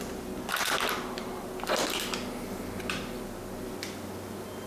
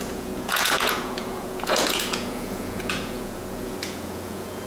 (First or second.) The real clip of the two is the first